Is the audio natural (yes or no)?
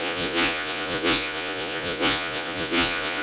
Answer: no